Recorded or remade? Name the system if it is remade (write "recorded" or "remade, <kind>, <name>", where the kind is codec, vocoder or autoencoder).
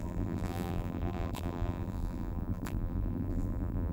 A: remade, vocoder, BigVGAN v2